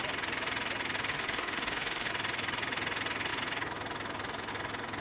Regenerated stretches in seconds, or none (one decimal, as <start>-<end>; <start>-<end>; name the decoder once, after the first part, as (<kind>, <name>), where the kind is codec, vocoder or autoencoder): 1.1-2.1 (autoencoder, DAC-VAE)